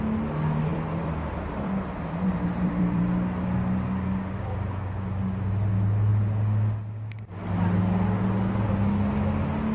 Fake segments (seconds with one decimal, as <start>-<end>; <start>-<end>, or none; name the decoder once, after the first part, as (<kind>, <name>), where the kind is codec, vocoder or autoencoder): 0.7-3.1 (vocoder, BigVGAN v2)